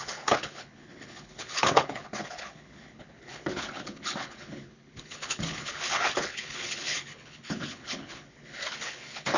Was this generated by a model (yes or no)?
yes